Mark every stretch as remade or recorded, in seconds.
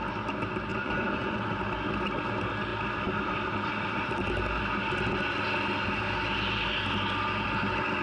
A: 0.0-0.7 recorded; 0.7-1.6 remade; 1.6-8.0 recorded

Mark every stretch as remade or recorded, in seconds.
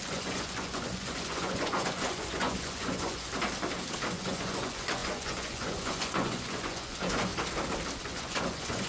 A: 0.0-3.3 remade; 3.3-4.1 recorded; 4.1-7.3 remade; 7.3-8.0 recorded; 8.0-8.9 remade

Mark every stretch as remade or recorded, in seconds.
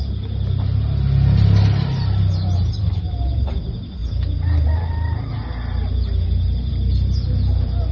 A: 0.0-7.9 recorded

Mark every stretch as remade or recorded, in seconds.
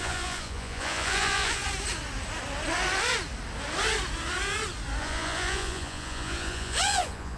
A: 0.0-1.6 remade; 1.6-5.0 recorded; 5.0-7.4 remade